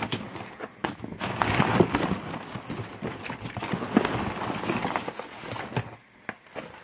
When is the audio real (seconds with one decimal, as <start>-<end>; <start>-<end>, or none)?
0.0-0.8; 1.4-6.8